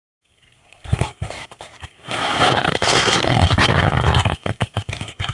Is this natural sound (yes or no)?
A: no